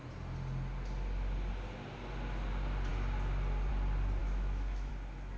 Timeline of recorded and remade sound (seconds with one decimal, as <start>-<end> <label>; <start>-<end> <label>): 0.0-4.2 recorded; 4.2-4.9 remade; 4.9-5.4 recorded